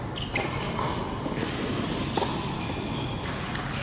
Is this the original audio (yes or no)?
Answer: yes